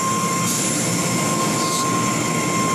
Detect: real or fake real